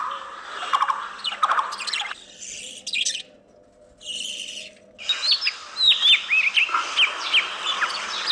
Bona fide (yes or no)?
yes